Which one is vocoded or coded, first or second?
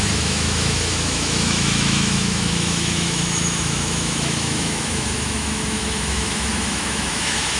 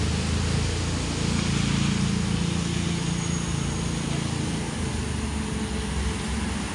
first